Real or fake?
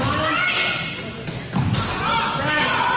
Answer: real